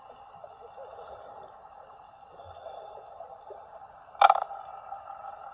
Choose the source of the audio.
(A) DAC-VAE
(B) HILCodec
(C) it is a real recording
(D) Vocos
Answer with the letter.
C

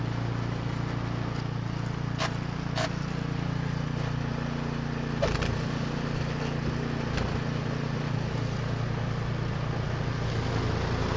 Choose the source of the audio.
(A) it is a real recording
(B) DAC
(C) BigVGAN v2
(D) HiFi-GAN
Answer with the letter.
A